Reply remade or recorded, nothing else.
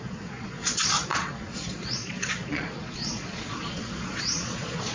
remade